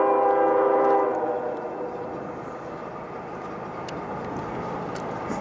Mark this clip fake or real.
real